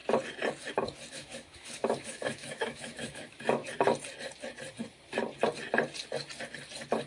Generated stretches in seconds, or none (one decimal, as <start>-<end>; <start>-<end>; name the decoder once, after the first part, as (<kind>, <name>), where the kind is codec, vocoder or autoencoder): 1.1-3.6 (autoencoder, DAC-VAE)